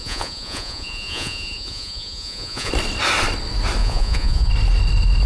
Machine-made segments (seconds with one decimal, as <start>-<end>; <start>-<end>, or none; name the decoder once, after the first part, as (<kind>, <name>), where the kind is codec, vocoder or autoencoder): 0.0-2.7 (vocoder, Vocos); 3.8-4.5